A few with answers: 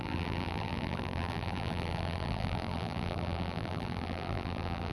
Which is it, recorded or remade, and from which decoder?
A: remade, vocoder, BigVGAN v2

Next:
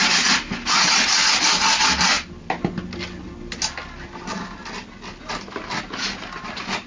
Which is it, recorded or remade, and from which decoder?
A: recorded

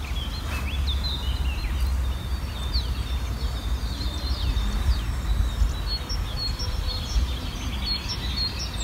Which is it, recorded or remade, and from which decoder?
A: recorded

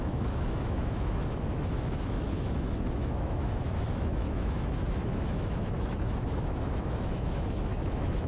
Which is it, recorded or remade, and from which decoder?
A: remade, autoencoder, DAC-VAE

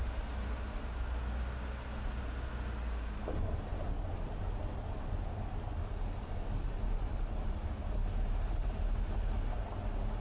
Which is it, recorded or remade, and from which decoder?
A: recorded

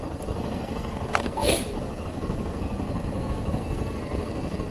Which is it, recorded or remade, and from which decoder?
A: remade, codec, SNAC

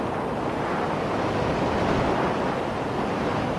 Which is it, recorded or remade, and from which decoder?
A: recorded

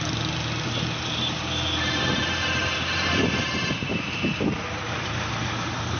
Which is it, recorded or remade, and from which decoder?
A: recorded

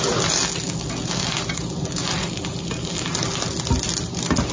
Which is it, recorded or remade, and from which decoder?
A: recorded